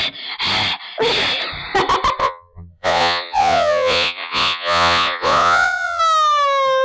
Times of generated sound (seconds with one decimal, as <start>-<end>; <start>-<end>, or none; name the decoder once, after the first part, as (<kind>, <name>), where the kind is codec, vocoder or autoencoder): 2.2-6.0 (vocoder, Vocos)